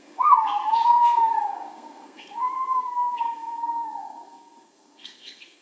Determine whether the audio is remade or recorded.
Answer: remade